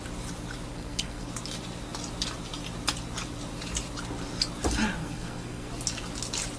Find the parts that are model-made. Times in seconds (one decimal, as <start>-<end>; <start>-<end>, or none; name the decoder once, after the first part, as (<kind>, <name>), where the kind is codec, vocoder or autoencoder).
0.7-1.3 (codec, SNAC); 5.0-5.7